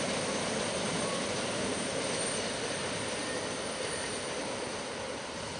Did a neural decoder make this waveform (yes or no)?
yes